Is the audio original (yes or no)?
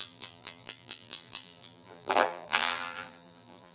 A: no